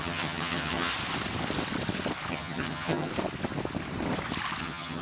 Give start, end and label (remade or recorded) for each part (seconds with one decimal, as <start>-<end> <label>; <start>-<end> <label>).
0.0-0.9 remade; 0.9-2.3 recorded; 2.3-3.1 remade; 3.1-4.6 recorded; 4.6-5.0 remade